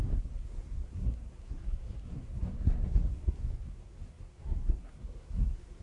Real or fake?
fake